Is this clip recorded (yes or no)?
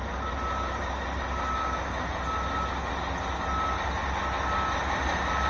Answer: yes